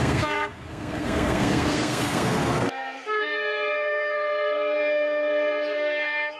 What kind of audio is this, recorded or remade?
remade